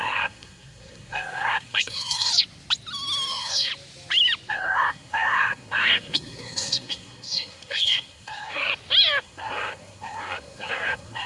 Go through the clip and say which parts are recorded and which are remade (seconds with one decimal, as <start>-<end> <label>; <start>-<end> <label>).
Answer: 0.0-2.3 remade; 2.3-3.3 recorded; 3.3-3.7 remade; 3.7-4.5 recorded; 4.5-8.7 remade; 8.7-9.2 recorded; 9.2-11.3 remade

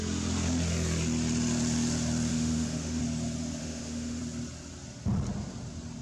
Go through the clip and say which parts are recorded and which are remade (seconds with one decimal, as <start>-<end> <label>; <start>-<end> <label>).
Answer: 0.0-2.3 recorded; 2.3-3.0 remade; 3.0-3.6 recorded; 3.6-4.2 remade; 4.2-6.0 recorded